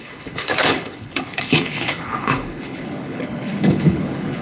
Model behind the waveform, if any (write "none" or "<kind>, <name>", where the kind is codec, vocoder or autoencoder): codec, HILCodec